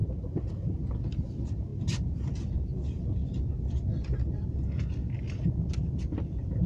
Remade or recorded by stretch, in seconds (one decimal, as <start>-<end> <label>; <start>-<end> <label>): 0.0-6.7 recorded